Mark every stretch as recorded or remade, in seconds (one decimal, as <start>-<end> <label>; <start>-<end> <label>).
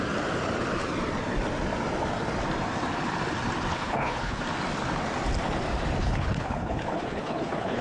0.0-3.7 recorded; 3.7-4.4 remade; 4.4-6.0 recorded; 6.0-7.8 remade